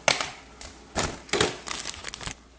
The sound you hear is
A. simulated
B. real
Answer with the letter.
B